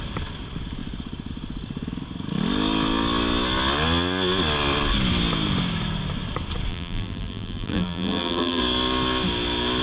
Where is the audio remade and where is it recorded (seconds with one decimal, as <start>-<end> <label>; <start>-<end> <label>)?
0.0-6.7 recorded; 6.7-8.6 remade; 8.6-9.8 recorded